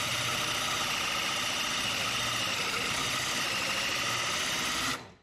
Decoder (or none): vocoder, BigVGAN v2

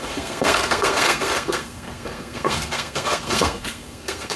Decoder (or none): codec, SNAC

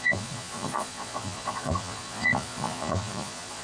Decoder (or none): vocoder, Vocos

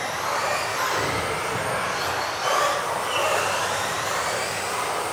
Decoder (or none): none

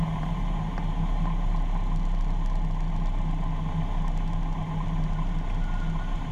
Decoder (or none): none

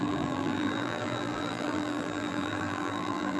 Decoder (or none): vocoder, BigVGAN v2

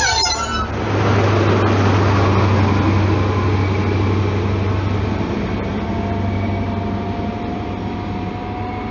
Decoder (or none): none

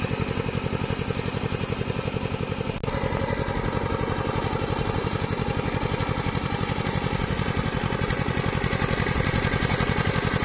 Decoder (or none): none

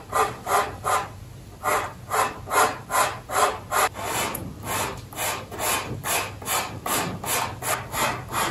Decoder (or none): none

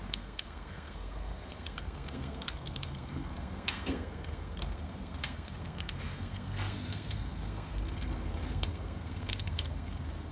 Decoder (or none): codec, SNAC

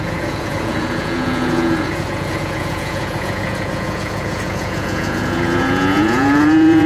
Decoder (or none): vocoder, Vocos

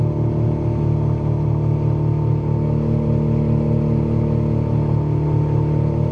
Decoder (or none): none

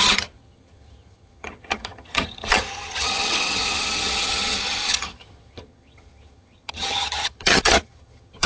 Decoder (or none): vocoder, HiFi-GAN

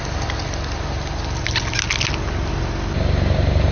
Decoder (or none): none